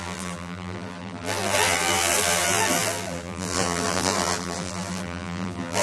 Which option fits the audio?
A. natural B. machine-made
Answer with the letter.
B